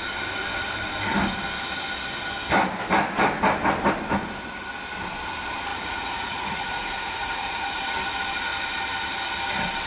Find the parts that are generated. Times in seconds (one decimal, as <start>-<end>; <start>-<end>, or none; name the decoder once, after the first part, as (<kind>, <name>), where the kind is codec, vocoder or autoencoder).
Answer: 5.7-7.8 (vocoder, Vocos)